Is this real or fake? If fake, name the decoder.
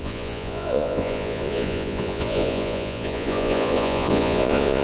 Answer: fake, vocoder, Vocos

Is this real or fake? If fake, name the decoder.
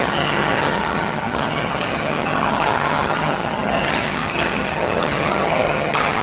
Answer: fake, vocoder, HiFi-GAN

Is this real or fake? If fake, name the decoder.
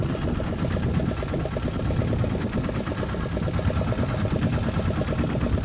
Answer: real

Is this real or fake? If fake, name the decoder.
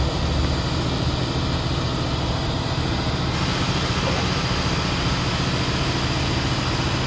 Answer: real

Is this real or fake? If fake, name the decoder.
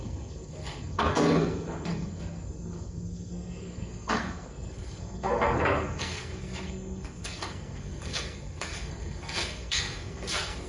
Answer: fake, codec, SNAC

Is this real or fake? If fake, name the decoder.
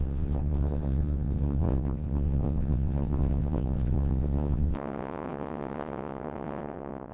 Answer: fake, vocoder, WaveNeXt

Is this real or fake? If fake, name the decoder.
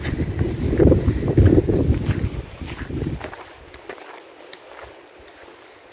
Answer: real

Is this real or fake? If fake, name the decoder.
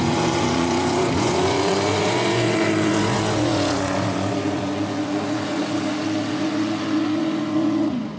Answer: fake, vocoder, Vocos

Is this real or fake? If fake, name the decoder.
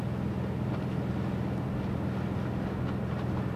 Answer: real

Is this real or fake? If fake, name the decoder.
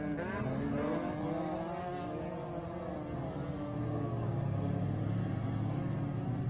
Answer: real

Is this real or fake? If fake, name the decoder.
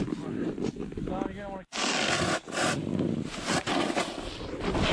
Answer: real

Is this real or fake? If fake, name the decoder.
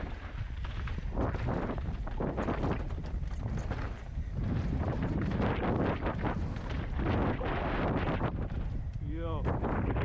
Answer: real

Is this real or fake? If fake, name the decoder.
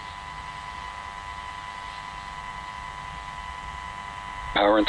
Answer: real